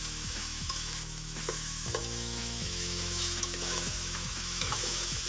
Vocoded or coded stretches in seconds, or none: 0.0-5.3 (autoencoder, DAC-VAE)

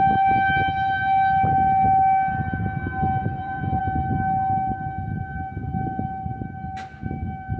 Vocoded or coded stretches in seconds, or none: 3.2-3.8 (vocoder, BigVGAN v2)

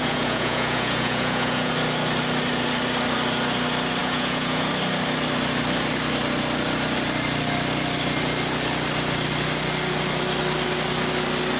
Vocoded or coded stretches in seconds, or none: 0.0-1.7 (vocoder, Vocos); 4.0-4.7

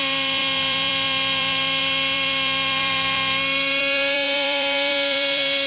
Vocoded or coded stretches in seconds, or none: 0.0-5.7 (vocoder, BigVGAN v2)

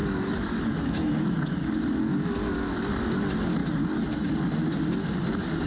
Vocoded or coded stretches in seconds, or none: 0.0-1.7 (autoencoder, DAC-VAE)